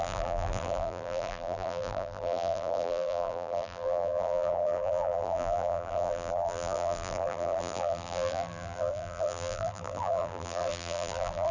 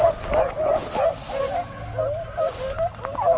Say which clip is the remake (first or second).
first